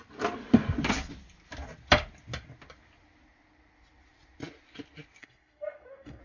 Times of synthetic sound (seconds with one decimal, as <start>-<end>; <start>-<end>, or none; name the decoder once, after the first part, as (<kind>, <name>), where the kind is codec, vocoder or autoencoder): 5.2-6.2 (codec, SNAC)